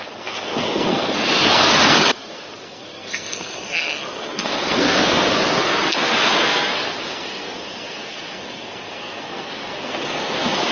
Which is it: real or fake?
fake